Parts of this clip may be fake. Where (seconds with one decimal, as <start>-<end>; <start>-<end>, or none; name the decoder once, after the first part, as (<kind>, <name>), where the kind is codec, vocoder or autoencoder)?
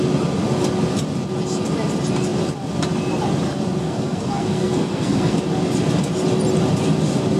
3.8-5.4 (codec, SNAC)